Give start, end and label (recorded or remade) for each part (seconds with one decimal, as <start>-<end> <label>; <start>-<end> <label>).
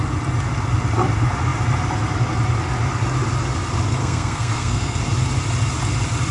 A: 0.0-4.0 recorded; 4.0-5.0 remade; 5.0-6.3 recorded